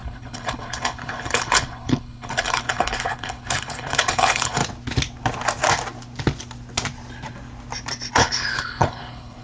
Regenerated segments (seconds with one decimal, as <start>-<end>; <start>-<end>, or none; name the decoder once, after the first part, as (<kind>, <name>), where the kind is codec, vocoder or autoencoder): 0.0-4.6 (codec, HILCodec); 8.1-9.4